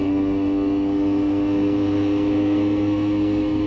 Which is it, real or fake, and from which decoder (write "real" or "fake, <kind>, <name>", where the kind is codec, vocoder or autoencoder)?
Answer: fake, codec, SNAC